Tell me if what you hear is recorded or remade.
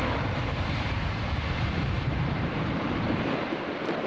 remade